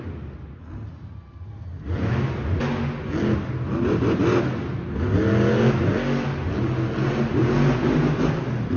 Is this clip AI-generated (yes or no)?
no